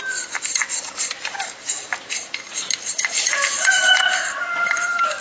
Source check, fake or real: real